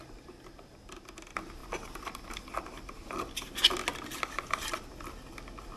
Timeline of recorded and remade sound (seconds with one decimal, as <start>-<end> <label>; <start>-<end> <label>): 0.0-5.8 recorded